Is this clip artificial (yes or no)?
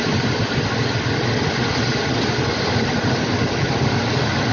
no